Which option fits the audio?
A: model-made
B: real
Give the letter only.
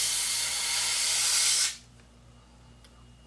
B